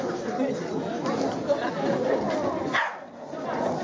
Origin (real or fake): real